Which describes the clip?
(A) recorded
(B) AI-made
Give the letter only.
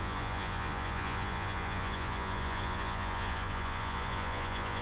B